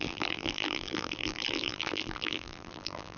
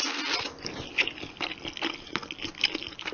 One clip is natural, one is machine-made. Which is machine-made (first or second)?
first